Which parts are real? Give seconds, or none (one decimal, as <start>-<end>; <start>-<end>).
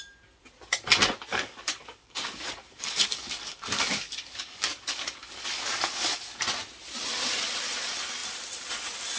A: 0.0-1.3; 6.4-9.2